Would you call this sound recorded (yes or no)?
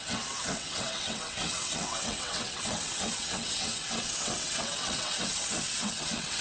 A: no